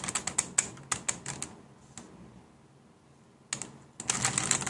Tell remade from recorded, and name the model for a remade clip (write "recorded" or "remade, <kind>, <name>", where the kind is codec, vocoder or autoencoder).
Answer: recorded